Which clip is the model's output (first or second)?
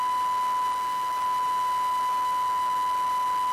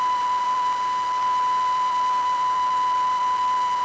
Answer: second